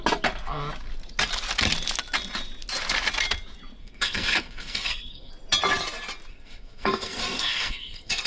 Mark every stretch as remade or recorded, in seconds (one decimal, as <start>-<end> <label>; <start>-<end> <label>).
0.0-3.8 recorded; 3.8-5.3 remade; 5.3-6.3 recorded; 6.3-8.3 remade